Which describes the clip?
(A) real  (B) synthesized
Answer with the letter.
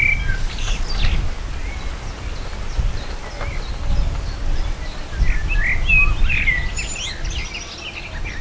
A